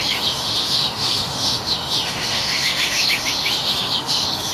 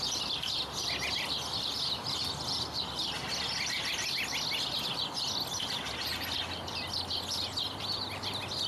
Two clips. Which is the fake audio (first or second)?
first